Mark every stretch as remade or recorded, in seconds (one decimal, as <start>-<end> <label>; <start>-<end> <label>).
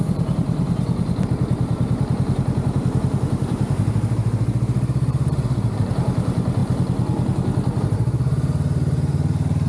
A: 0.0-6.6 remade; 6.6-7.8 recorded; 7.8-9.7 remade